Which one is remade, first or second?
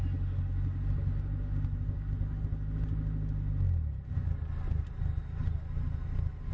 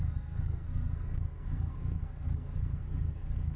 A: second